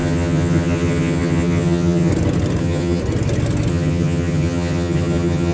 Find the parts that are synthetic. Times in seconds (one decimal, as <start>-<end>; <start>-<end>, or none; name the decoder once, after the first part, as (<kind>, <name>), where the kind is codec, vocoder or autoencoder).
0.0-2.1 (vocoder, HiFi-GAN); 2.6-3.0; 3.7-5.5